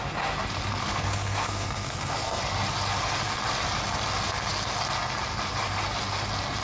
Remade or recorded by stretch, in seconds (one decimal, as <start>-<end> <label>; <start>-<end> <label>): 0.0-0.8 recorded; 0.8-2.4 remade; 2.4-6.6 recorded